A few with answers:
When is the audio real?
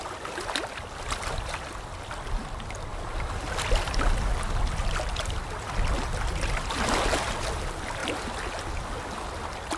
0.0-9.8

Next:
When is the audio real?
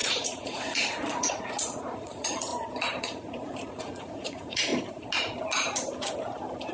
2.5-3.0; 4.7-6.7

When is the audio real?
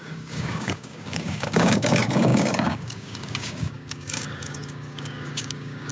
none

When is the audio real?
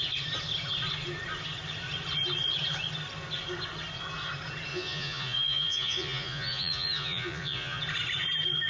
0.0-4.7; 7.8-8.7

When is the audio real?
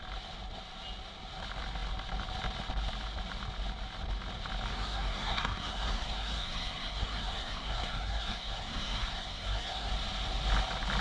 0.0-4.7; 9.9-11.0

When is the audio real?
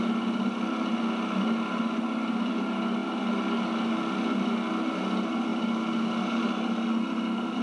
0.0-7.6